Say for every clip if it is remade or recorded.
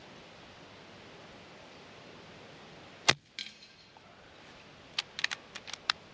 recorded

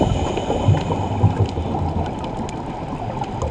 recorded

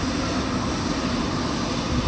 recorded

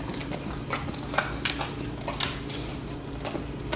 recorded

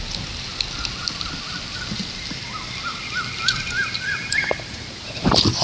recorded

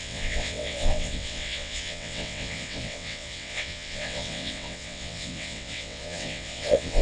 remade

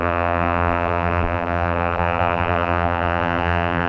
remade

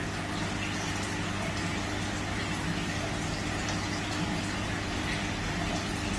recorded